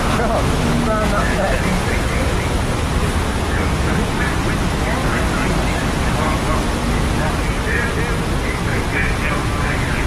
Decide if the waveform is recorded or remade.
recorded